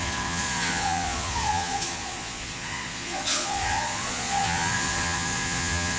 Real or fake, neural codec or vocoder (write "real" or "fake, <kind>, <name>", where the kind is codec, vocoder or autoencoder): fake, vocoder, Vocos